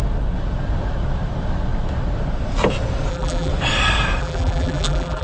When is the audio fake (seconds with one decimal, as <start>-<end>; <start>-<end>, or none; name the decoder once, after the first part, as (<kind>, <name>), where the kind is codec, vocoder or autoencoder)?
3.1-3.5 (vocoder, BigVGAN v2); 4.2-5.2